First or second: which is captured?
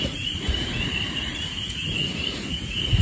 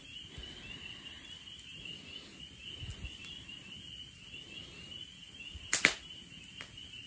second